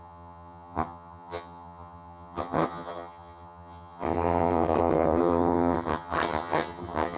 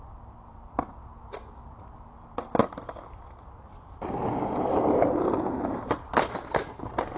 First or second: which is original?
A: second